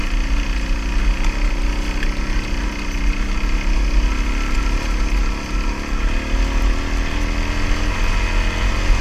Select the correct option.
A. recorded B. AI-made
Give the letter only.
A